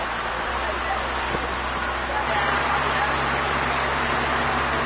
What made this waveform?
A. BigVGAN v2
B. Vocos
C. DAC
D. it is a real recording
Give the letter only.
D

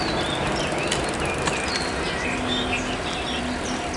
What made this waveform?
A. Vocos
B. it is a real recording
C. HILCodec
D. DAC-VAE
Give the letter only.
B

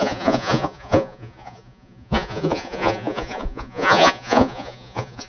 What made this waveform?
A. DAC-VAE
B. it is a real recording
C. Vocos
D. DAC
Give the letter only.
C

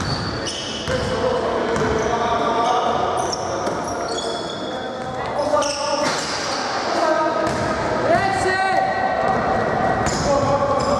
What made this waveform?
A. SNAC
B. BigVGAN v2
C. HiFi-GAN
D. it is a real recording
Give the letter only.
D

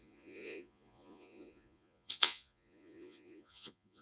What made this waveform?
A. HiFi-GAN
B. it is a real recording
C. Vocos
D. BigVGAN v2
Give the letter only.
C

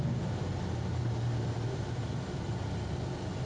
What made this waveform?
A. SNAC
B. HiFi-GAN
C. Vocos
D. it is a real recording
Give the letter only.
D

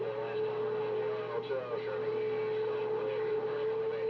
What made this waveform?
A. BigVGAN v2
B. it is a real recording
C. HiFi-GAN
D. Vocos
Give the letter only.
B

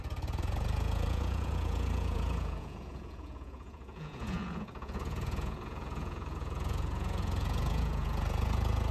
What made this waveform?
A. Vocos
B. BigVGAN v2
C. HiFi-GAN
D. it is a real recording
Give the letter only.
A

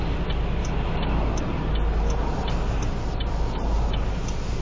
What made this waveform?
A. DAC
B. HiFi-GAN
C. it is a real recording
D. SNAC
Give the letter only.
C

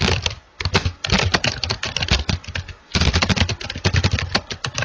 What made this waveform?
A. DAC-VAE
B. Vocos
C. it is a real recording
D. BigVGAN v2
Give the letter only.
C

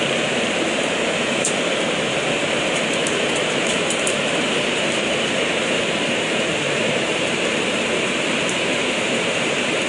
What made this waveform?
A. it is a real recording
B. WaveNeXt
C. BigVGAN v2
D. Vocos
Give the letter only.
C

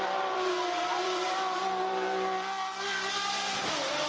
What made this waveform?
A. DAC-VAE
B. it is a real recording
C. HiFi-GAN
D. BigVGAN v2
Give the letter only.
D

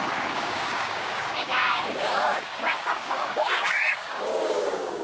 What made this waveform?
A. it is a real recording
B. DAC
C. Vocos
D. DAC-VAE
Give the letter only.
B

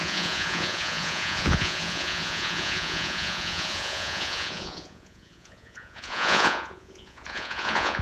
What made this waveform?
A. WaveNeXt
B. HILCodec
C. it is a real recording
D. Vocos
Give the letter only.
D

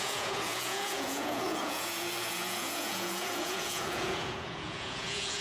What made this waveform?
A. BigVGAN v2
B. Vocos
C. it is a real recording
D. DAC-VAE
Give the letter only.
B